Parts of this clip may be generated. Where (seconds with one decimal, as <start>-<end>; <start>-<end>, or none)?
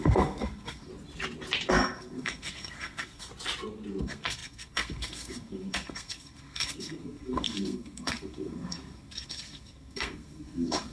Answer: 0.0-0.9; 1.7-3.3; 4.0-10.9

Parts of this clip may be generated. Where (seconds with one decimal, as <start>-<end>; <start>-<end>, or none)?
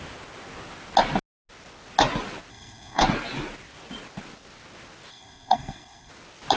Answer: 2.5-3.0; 5.1-6.1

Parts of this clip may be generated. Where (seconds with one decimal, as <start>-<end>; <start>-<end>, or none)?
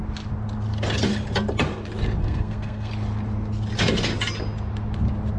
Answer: 2.2-2.9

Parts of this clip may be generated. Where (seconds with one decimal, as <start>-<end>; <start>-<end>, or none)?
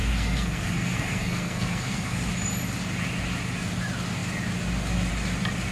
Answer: 0.0-2.3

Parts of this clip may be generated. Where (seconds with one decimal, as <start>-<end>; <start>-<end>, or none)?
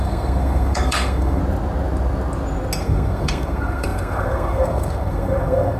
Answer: 0.0-1.4; 2.8-5.8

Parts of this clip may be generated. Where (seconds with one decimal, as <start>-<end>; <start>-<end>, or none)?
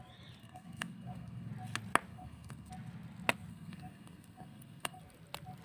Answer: 0.4-1.5; 2.1-2.7; 3.5-5.0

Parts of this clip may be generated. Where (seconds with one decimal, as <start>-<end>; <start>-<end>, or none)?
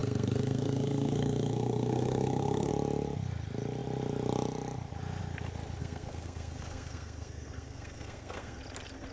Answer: 0.0-2.7; 5.8-8.6